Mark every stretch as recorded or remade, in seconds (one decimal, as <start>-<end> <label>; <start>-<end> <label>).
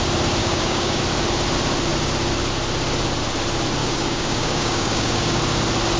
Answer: 0.0-0.4 recorded; 0.4-1.0 remade; 1.0-3.8 recorded; 3.8-5.4 remade; 5.4-6.0 recorded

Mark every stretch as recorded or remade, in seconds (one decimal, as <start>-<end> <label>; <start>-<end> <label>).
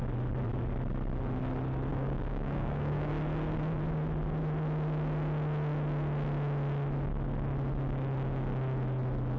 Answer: 0.0-1.9 recorded; 1.9-3.1 remade; 3.1-9.4 recorded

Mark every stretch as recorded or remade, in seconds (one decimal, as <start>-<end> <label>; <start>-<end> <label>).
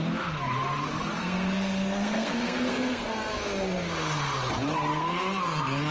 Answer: 0.0-1.2 recorded; 1.2-3.1 remade; 3.1-4.9 recorded; 4.9-5.9 remade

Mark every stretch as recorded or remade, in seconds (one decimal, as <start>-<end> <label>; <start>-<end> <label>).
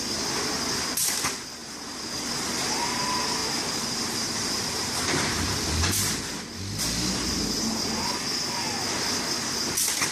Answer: 0.0-3.4 recorded; 3.4-6.2 remade; 6.2-10.1 recorded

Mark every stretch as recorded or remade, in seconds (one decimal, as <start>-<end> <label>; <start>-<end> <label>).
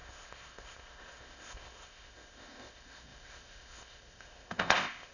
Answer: 0.0-5.1 remade